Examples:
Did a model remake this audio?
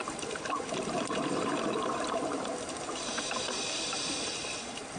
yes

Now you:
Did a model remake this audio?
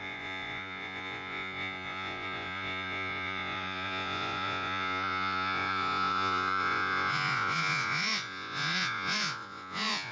yes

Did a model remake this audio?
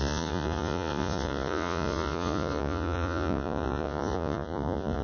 yes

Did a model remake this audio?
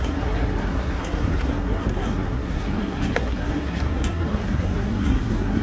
yes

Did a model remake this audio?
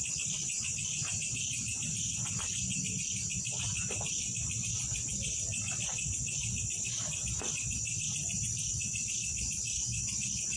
no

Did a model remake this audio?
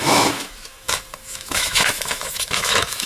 yes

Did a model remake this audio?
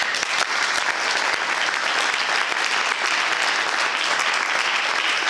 no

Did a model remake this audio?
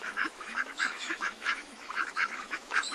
yes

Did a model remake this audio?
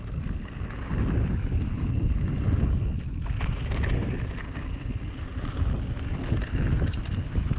no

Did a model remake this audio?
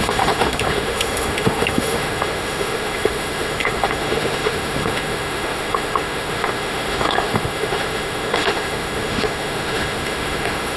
yes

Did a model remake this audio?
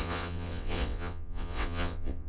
yes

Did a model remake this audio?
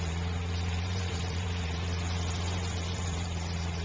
yes